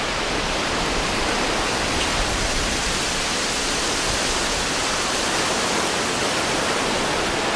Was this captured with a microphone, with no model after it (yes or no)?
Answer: yes